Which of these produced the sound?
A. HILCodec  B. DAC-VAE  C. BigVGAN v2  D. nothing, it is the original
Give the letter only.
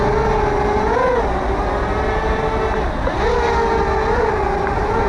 D